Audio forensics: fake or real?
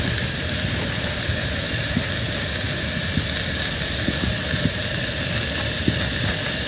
real